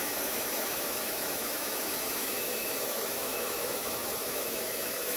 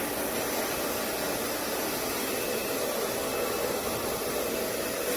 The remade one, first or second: first